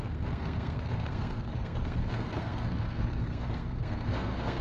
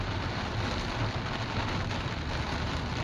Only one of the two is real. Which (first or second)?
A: second